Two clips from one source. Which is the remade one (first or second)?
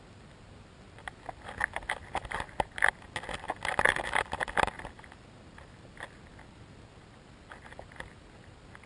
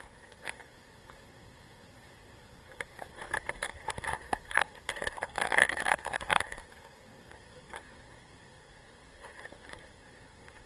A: second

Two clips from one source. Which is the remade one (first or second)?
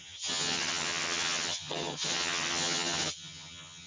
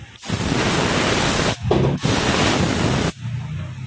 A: first